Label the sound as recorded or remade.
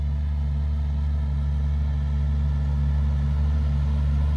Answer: recorded